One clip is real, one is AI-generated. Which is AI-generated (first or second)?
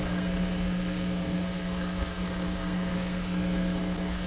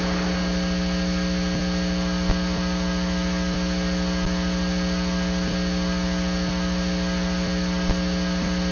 first